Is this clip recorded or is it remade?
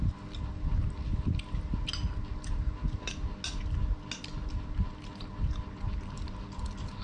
recorded